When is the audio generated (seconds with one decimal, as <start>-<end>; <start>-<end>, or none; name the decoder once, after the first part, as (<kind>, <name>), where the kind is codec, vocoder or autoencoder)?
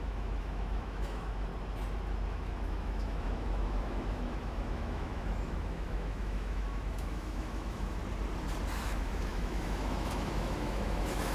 0.0-1.5 (autoencoder, DAC-VAE); 2.3-8.0; 8.8-11.3